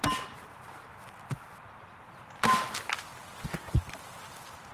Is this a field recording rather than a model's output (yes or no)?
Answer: yes